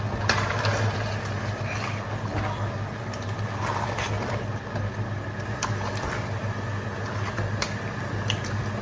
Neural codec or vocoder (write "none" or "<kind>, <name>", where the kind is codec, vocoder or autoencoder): none